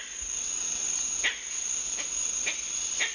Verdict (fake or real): real